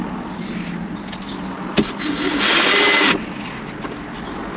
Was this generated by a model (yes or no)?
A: no